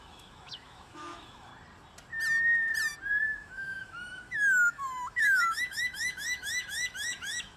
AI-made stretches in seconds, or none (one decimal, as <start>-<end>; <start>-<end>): 0.0-1.5; 3.2-7.6